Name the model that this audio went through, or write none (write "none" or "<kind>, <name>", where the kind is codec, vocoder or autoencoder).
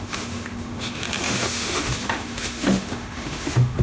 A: autoencoder, DAC-VAE